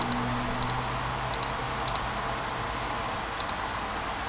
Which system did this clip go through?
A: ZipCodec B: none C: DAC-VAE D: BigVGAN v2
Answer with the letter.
B